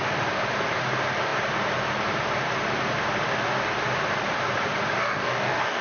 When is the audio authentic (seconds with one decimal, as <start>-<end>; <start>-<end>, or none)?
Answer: 0.0-5.0